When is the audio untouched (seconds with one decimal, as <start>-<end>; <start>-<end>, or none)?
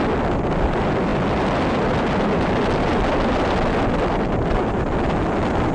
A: 0.0-5.7